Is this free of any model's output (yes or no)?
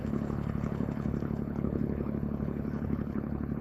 no